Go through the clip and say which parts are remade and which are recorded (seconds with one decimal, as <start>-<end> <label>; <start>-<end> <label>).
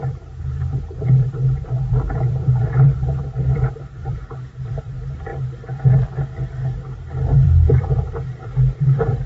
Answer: 0.0-5.3 remade; 5.3-7.3 recorded; 7.3-9.3 remade